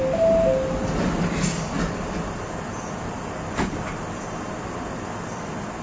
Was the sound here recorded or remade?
recorded